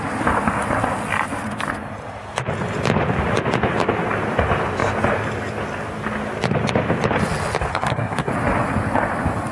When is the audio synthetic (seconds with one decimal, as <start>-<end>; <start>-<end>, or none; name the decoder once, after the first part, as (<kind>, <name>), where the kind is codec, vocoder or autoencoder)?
7.7-8.3 (codec, SNAC)